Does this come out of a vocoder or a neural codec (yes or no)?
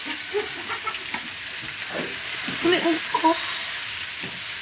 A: no